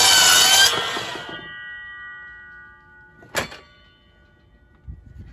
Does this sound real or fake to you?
real